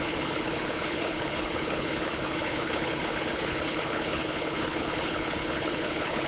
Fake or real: fake